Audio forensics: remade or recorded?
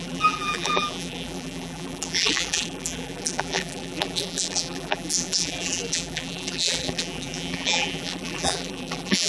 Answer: remade